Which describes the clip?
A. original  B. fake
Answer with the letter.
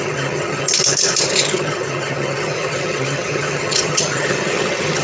B